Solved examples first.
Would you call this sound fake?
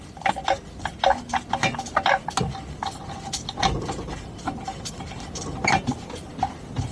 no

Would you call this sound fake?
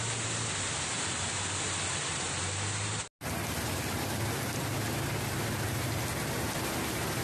no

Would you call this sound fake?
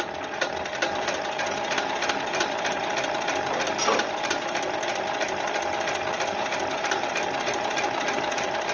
no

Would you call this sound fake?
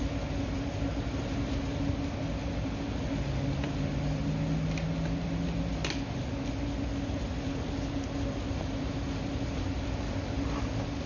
no